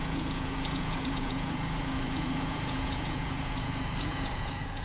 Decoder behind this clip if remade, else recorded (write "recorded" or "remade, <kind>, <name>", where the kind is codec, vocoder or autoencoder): remade, vocoder, Vocos